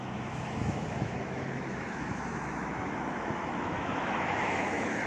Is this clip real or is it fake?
fake